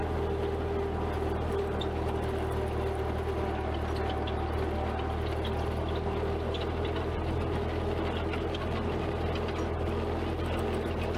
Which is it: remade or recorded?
recorded